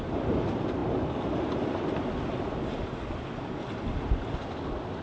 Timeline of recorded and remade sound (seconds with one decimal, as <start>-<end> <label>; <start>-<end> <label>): 0.0-5.0 recorded